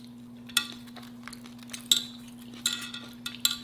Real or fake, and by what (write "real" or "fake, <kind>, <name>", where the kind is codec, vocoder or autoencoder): real